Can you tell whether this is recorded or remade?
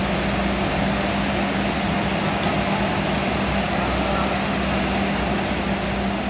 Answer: recorded